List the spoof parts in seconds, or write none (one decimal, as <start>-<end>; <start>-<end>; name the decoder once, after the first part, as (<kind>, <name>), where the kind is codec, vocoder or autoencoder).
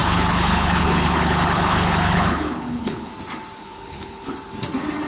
0.0-3.1 (codec, HILCodec); 3.6-4.3